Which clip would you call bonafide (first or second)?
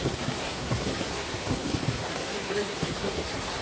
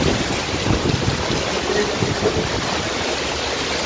second